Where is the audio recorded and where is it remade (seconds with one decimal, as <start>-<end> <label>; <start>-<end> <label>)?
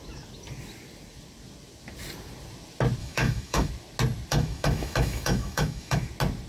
0.0-3.0 recorded; 3.0-3.7 remade; 3.7-4.3 recorded; 4.3-6.1 remade; 6.1-6.5 recorded